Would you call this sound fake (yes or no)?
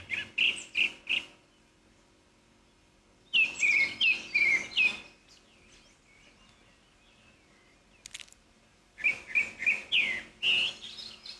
no